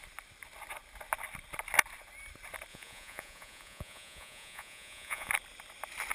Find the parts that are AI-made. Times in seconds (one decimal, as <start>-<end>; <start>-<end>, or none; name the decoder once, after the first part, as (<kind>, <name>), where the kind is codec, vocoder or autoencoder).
2.7-5.3 (vocoder, Vocos)